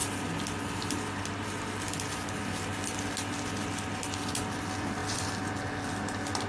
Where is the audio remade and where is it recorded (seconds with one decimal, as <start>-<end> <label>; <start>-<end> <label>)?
0.0-6.5 recorded